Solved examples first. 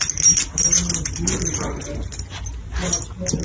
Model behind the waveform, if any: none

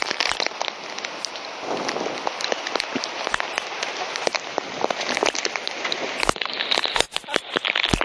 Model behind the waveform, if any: none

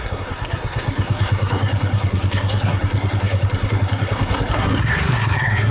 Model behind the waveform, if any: codec, SNAC